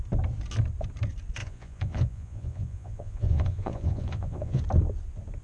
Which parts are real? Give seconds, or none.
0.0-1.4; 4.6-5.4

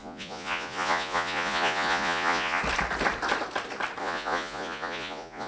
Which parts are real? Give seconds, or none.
2.6-4.0

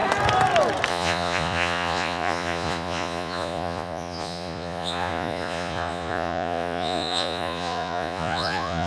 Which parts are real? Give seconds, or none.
0.0-0.9

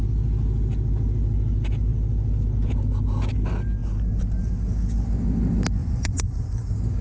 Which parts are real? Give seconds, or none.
0.0-5.8

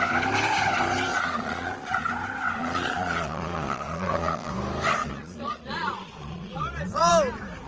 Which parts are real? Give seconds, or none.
0.0-1.1; 2.1-2.6; 4.5-5.0; 7.1-7.7

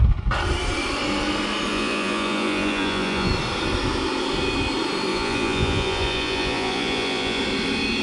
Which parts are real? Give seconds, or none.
0.0-1.7; 3.3-5.1; 7.4-8.0

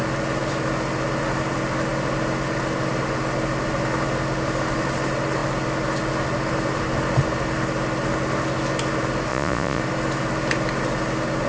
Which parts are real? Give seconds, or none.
0.0-9.3; 9.8-11.5

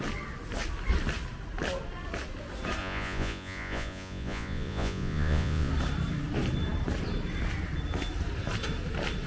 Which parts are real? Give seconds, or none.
0.0-2.8; 5.7-9.3